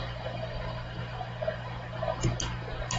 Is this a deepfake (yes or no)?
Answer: no